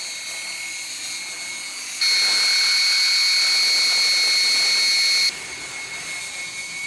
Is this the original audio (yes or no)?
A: yes